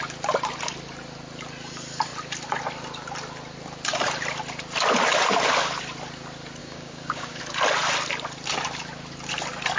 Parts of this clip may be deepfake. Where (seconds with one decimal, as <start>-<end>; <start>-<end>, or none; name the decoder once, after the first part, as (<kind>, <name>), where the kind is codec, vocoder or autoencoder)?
6.6-7.4 (codec, DAC)